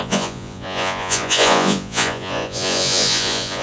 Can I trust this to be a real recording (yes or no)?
no